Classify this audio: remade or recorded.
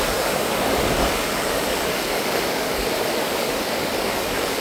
remade